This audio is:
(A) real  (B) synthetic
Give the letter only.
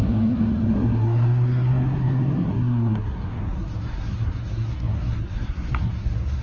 B